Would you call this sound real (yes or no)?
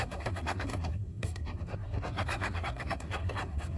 no